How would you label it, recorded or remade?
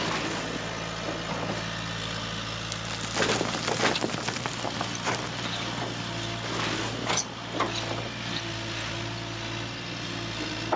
recorded